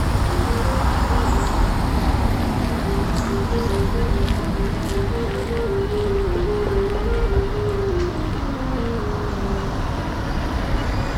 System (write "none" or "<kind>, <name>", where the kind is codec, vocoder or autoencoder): none